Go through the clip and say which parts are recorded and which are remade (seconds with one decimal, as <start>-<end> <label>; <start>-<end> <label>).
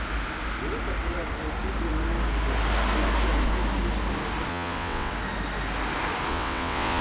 0.0-4.5 recorded; 4.5-5.1 remade; 5.1-6.3 recorded; 6.3-7.0 remade